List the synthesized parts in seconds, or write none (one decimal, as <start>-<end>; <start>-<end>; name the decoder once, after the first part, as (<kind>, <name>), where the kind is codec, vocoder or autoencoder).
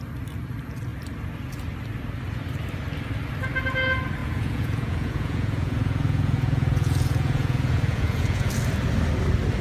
4.2-8.5 (vocoder, Vocos)